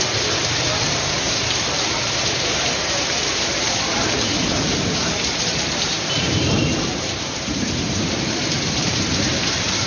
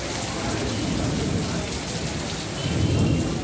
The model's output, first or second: first